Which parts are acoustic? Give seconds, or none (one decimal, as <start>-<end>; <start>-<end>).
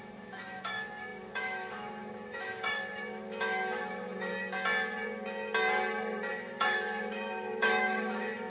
4.3-6.3